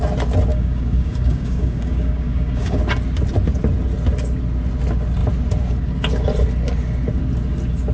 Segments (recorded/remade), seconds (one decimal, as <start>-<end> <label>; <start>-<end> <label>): 0.0-0.5 recorded; 0.5-2.8 remade; 2.8-7.9 recorded